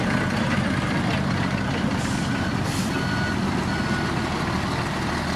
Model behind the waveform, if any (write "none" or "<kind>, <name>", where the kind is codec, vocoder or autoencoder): none